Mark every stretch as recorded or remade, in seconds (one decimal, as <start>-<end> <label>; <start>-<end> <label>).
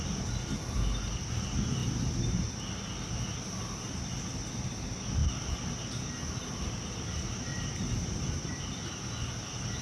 0.0-7.5 recorded; 7.5-8.6 remade; 8.6-9.8 recorded